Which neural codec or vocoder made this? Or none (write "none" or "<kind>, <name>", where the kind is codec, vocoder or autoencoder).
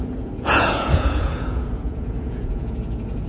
vocoder, Vocos